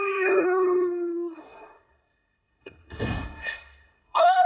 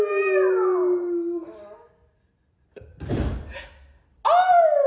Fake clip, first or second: first